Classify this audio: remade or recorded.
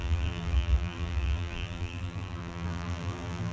remade